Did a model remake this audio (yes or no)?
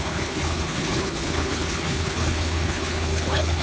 yes